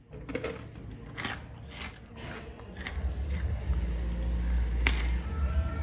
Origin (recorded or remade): recorded